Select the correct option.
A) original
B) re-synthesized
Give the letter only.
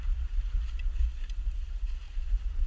B